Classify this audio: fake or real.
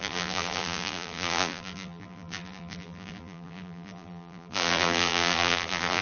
fake